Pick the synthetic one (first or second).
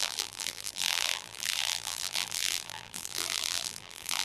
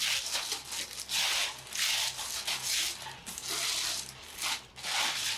first